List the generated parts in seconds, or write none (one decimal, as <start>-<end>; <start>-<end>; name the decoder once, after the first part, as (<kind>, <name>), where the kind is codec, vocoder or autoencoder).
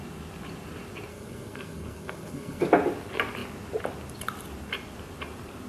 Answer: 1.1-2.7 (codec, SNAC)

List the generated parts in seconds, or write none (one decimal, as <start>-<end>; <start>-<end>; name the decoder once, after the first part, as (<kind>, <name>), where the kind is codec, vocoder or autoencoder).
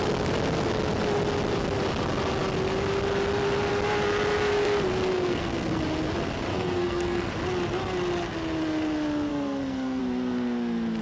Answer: 5.1-5.8 (codec, SNAC); 6.5-7.3; 9.3-10.0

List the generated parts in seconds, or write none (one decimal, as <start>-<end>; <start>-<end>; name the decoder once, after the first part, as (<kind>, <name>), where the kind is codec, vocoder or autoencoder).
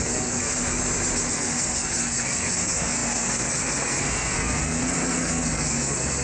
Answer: 0.0-0.8 (codec, SNAC); 1.3-6.2